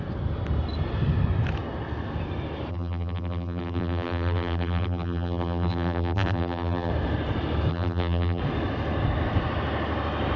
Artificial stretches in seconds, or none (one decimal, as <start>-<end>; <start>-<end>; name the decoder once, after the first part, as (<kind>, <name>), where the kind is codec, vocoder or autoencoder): 2.7-6.9 (vocoder, BigVGAN v2); 7.7-8.4